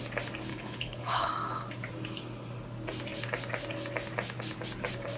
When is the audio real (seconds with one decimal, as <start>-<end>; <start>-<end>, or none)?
0.0-0.5; 1.3-5.2